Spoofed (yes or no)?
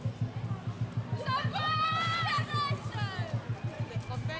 no